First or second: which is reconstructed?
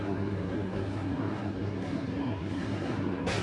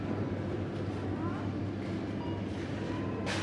first